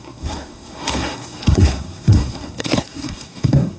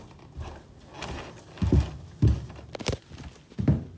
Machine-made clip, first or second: first